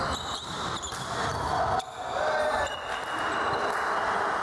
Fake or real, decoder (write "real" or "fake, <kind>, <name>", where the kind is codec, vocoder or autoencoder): real